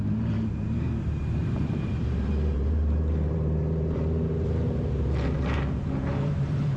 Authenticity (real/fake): fake